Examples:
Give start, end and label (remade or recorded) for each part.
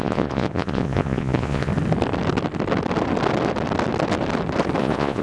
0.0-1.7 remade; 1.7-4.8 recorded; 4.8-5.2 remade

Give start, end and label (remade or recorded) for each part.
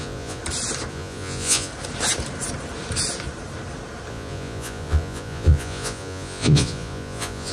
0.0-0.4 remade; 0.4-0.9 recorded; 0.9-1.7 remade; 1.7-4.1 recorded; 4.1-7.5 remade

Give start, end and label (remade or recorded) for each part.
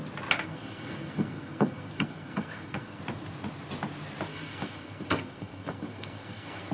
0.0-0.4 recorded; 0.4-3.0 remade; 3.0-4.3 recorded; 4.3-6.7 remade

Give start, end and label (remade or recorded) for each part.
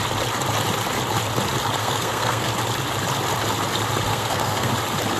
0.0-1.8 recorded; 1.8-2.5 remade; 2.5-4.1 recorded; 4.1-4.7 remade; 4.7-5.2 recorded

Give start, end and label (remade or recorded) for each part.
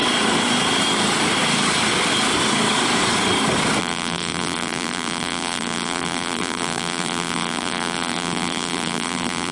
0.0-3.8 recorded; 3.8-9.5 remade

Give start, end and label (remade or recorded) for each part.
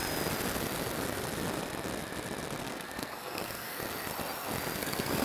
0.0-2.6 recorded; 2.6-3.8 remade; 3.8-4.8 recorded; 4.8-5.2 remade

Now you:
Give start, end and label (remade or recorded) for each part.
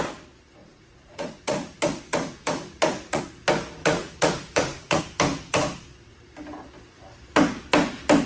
0.0-0.6 recorded; 0.6-3.2 remade; 3.2-3.8 recorded; 3.8-5.0 remade; 5.0-8.3 recorded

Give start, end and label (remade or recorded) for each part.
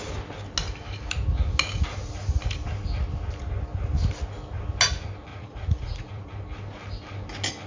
0.0-5.3 recorded; 5.3-6.3 remade; 6.3-7.7 recorded